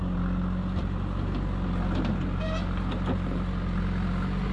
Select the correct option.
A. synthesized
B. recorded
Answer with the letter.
B